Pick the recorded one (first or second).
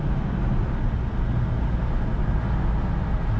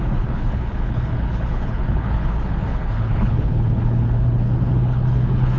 first